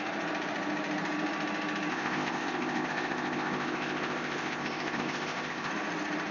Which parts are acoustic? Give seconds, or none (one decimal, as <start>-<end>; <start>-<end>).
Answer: 0.0-1.9; 5.7-6.3